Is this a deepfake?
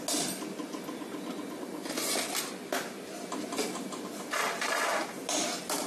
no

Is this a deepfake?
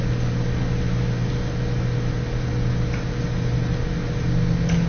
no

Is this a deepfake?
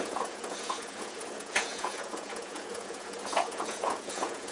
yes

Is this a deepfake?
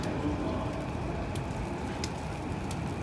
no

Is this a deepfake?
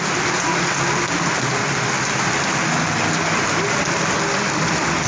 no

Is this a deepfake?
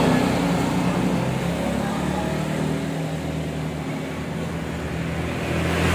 no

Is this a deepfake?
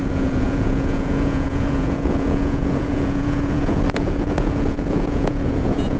yes